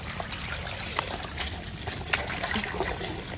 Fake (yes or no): no